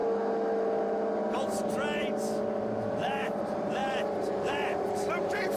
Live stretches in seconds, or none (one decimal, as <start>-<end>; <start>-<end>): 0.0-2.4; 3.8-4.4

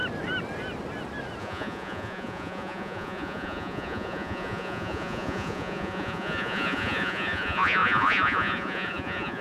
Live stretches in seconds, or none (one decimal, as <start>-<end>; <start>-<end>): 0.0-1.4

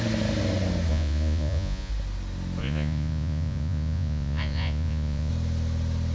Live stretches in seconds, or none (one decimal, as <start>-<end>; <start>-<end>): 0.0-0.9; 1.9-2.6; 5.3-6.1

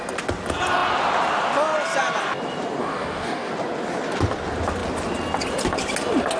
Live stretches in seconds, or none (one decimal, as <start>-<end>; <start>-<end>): 0.0-2.8; 3.5-6.4

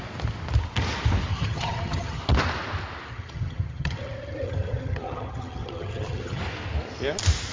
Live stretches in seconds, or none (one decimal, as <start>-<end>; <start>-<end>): 0.0-1.3; 2.2-3.1; 6.4-7.5

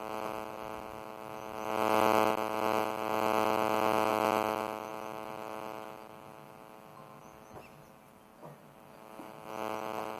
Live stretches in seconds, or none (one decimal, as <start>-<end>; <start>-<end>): 0.0-10.2